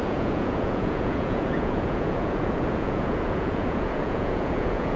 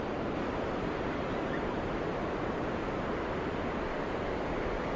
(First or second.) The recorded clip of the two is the second